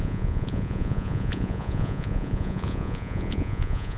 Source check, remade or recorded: remade